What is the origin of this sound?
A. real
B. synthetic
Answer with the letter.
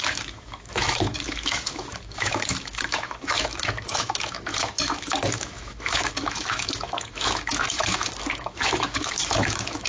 B